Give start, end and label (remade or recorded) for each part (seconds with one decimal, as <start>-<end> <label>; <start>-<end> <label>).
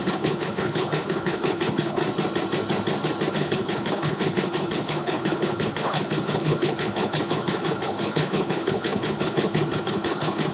0.0-2.0 remade; 2.0-3.3 recorded; 3.3-10.5 remade